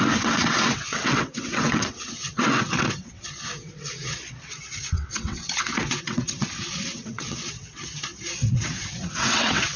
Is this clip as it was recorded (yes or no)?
no